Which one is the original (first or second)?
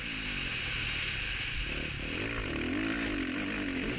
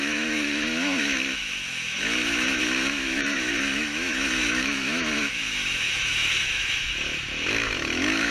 first